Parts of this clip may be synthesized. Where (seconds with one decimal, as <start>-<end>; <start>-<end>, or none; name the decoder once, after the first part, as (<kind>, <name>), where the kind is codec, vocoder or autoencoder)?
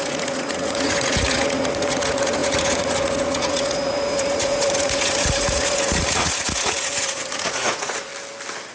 0.0-8.1 (vocoder, Vocos)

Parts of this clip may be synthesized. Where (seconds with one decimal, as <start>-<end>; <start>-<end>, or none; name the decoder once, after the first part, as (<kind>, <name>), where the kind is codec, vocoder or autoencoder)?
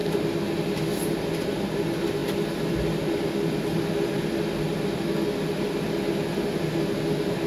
none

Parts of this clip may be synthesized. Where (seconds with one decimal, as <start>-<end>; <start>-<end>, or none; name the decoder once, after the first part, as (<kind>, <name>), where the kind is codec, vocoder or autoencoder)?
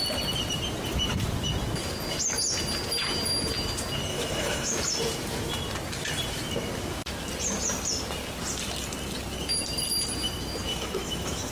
4.1-4.7 (autoencoder, DAC-VAE); 10.7-11.5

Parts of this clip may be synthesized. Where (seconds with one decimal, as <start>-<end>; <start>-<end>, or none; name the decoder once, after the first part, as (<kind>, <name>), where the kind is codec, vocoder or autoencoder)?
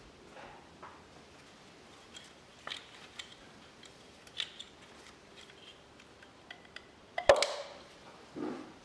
none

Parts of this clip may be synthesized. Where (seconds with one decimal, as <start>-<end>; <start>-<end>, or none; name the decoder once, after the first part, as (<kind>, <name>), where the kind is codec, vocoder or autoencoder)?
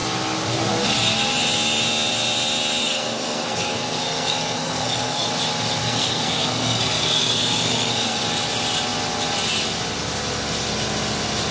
2.8-5.3 (codec, SNAC); 5.8-8.2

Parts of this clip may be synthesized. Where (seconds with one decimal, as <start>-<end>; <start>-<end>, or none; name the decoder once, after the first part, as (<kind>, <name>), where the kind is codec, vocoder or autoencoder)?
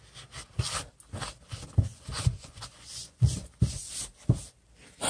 1.9-3.5 (vocoder, Vocos)